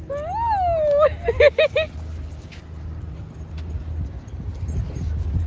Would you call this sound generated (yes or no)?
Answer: no